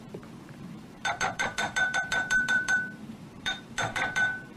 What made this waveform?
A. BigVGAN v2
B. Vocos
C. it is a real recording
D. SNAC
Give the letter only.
A